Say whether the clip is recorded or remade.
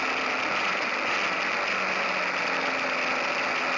recorded